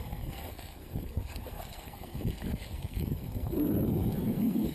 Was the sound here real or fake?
fake